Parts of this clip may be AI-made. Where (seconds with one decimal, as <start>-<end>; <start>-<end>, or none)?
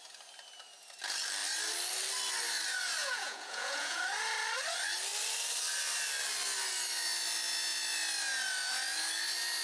3.0-4.0